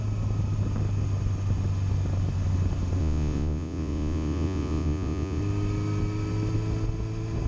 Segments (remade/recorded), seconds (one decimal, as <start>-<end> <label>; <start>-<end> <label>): 0.0-3.0 recorded; 3.0-5.4 remade; 5.4-7.5 recorded